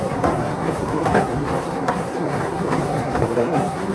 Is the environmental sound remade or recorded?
remade